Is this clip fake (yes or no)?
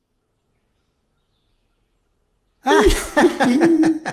yes